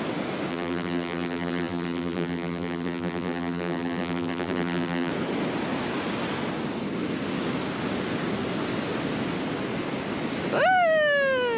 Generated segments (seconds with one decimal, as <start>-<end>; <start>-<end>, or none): 0.5-5.1